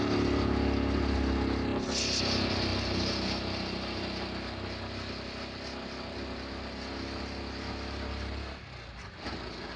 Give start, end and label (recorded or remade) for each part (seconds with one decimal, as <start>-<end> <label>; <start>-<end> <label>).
0.0-9.8 recorded